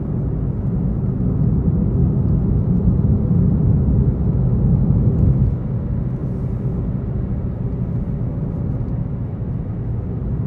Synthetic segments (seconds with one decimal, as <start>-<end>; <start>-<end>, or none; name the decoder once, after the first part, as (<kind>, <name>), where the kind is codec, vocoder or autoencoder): none